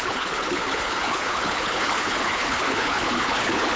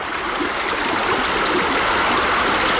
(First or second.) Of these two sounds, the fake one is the first